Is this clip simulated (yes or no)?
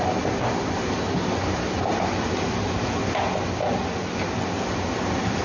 no